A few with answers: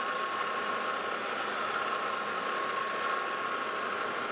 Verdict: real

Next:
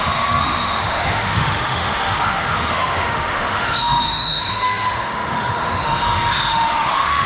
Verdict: fake